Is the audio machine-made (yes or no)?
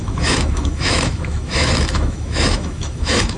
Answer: yes